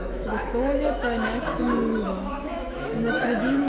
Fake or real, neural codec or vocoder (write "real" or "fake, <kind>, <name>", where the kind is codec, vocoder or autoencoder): fake, autoencoder, DAC-VAE